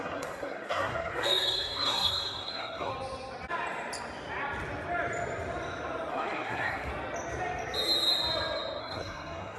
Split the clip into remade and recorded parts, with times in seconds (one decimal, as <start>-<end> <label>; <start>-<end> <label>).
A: 0.0-2.9 remade; 2.9-6.1 recorded; 6.1-6.9 remade; 6.9-8.8 recorded; 8.8-9.6 remade